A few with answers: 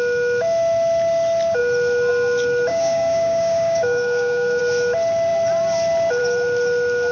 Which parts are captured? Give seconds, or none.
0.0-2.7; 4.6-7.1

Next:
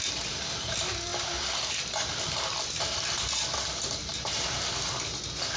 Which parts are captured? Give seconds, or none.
0.0-5.6

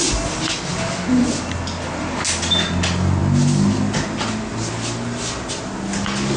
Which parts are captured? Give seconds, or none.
0.0-6.4

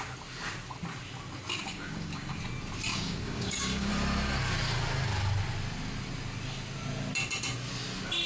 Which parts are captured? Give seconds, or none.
0.0-1.5; 2.4-2.9; 3.9-8.3

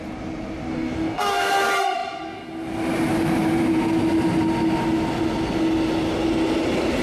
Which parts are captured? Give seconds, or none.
0.0-0.7; 1.5-7.0